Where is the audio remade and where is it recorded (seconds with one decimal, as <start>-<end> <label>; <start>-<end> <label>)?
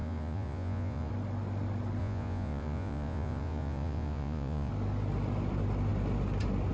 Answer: 0.0-1.1 remade; 1.1-2.0 recorded; 2.0-4.7 remade; 4.7-6.7 recorded